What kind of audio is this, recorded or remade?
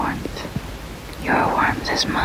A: recorded